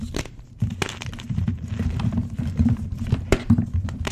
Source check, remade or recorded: remade